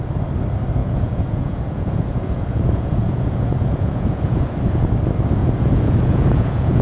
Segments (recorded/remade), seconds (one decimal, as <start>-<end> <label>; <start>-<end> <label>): 0.0-0.8 recorded; 0.8-4.9 remade; 4.9-5.4 recorded; 5.4-6.8 remade